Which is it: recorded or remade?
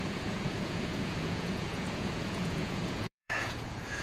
remade